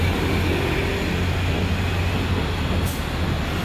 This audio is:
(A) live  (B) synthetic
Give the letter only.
A